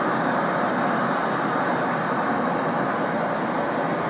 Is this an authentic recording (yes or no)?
yes